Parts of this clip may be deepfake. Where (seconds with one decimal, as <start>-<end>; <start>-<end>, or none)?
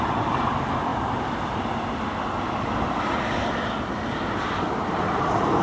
0.0-0.9; 4.3-5.6